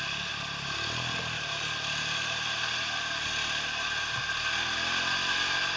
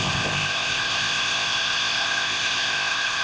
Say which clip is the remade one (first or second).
second